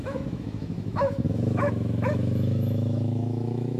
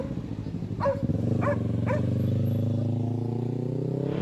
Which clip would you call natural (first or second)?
second